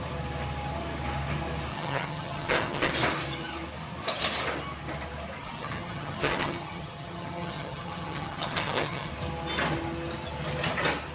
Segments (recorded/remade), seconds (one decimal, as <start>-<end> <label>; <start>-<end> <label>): 0.0-1.7 recorded; 1.7-2.9 remade; 2.9-5.4 recorded; 5.4-9.1 remade; 9.1-11.1 recorded